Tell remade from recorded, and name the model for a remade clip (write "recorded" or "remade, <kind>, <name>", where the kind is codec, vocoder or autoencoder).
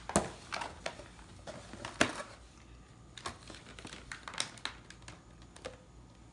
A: recorded